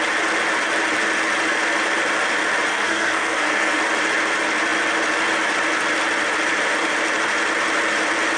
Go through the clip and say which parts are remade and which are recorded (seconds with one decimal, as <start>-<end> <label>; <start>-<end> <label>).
0.0-2.7 recorded; 2.7-3.8 remade; 3.8-8.4 recorded